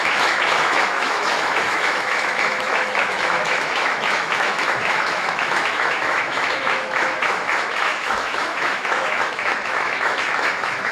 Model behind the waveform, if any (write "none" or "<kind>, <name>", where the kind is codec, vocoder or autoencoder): autoencoder, DAC-VAE